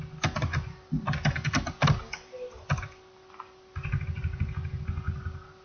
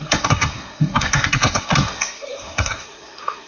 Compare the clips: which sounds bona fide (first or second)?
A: first